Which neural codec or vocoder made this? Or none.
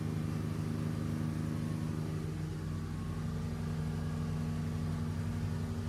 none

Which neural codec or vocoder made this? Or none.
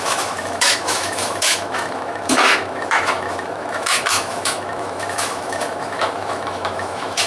autoencoder, DAC-VAE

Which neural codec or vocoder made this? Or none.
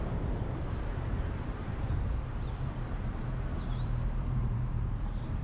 vocoder, BigVGAN v2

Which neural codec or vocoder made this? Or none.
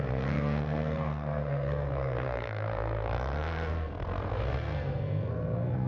codec, SNAC